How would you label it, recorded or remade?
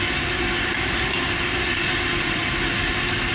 recorded